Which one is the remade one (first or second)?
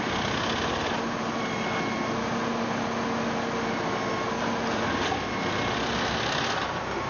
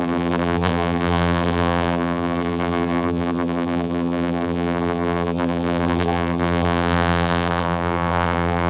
second